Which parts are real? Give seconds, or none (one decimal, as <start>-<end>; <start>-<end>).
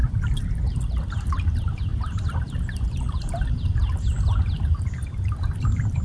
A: 0.0-6.0